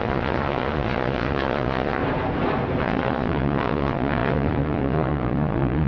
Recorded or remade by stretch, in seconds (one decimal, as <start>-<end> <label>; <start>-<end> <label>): 0.0-2.0 remade; 2.0-2.8 recorded; 2.8-5.9 remade